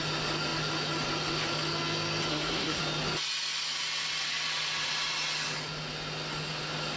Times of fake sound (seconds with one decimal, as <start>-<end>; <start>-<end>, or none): 2.3-2.8